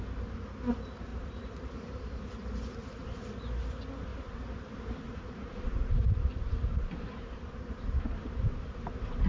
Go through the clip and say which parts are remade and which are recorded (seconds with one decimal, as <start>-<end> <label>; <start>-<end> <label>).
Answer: 0.0-1.1 recorded; 1.1-3.2 remade; 3.2-4.1 recorded; 4.1-9.3 remade